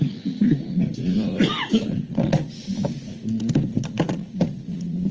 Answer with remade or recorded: remade